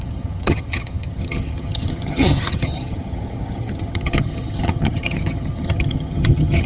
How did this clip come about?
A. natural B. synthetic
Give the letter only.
B